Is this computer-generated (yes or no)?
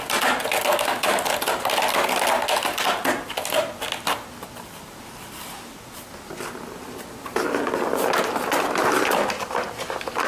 no